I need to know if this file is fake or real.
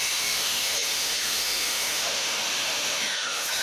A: fake